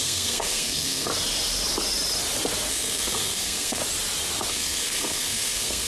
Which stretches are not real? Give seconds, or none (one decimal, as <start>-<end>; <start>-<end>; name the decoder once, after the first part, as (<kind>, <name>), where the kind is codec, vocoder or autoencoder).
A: 0.0-1.1 (codec, SNAC); 2.7-3.8; 4.5-5.9